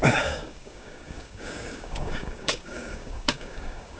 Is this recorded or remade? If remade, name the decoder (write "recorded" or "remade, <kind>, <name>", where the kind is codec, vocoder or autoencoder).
remade, codec, DAC